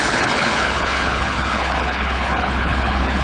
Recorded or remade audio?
remade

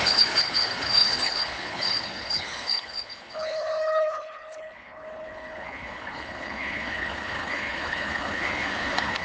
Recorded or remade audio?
remade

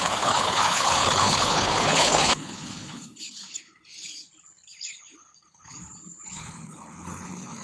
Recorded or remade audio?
remade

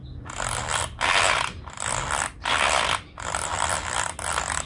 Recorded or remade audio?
recorded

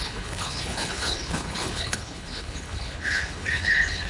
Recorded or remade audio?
remade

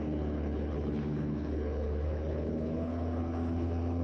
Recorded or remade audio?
remade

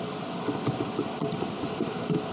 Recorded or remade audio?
recorded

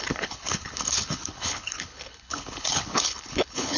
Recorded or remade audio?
remade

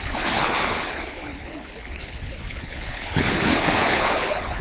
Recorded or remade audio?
remade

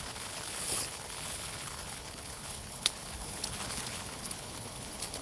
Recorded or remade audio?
remade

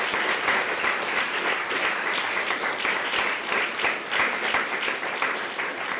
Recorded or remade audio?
recorded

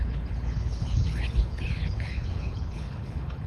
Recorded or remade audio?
remade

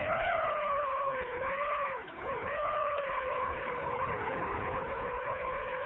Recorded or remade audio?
remade